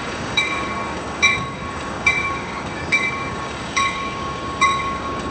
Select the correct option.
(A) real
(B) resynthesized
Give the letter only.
B